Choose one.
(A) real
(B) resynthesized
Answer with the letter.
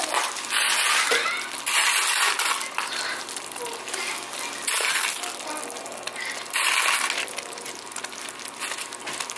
A